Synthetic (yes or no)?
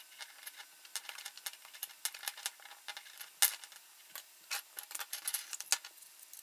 no